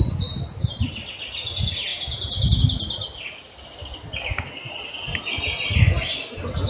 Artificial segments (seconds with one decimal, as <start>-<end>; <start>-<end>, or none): 1.9-2.6